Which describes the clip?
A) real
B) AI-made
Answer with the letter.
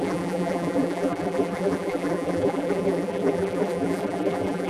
B